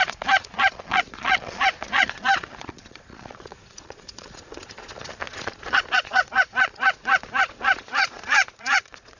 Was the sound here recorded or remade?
remade